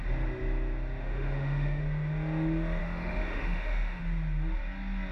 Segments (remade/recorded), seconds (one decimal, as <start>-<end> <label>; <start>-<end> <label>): 0.0-1.0 recorded; 1.0-1.8 remade; 1.8-2.8 recorded; 2.8-4.0 remade; 4.0-5.1 recorded